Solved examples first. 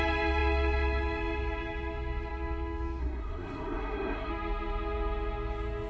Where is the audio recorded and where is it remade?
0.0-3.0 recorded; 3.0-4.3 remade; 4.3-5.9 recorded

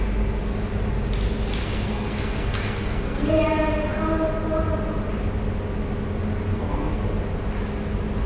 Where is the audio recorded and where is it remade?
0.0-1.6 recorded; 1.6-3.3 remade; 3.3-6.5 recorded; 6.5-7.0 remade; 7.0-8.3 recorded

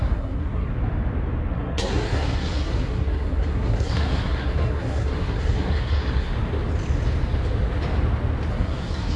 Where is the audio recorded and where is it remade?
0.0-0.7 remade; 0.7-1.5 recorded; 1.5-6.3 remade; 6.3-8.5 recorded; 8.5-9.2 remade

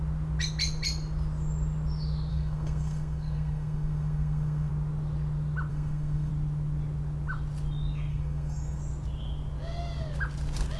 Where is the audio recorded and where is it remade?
0.0-2.3 recorded; 2.3-4.7 remade; 4.7-5.7 recorded; 5.7-6.3 remade; 6.3-8.1 recorded; 8.1-8.8 remade; 8.8-10.8 recorded

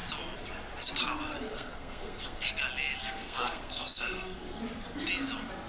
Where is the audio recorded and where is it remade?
0.0-1.5 recorded; 1.5-2.5 remade; 2.5-3.0 recorded; 3.0-4.6 remade; 4.6-5.7 recorded